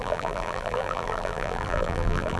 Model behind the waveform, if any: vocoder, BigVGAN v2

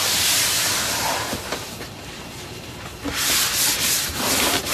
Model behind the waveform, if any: vocoder, BigVGAN v2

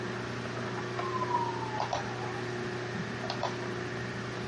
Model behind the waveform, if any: none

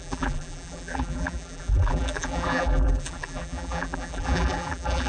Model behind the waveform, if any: vocoder, BigVGAN v2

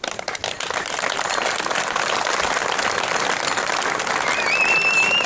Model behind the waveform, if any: none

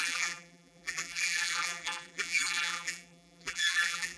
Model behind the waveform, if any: vocoder, BigVGAN v2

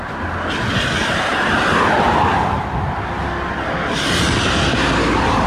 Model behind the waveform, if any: none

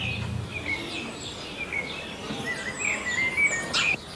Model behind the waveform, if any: none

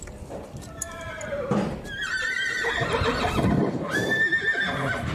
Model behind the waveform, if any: vocoder, BigVGAN v2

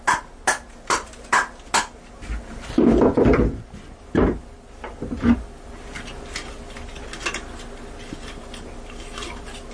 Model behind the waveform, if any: none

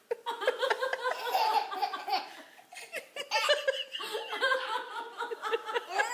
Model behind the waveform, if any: none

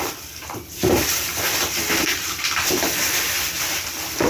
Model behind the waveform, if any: vocoder, BigVGAN v2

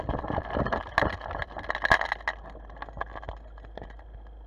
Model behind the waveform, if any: none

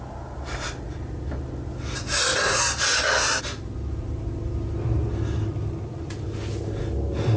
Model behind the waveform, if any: none